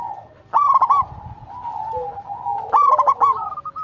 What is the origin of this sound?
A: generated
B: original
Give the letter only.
B